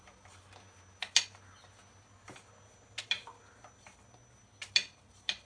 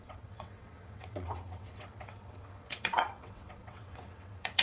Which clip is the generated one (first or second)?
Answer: second